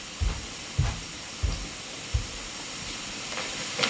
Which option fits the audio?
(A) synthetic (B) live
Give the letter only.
B